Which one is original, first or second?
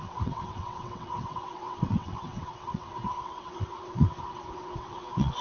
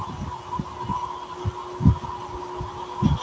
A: second